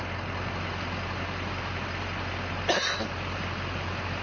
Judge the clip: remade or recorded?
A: recorded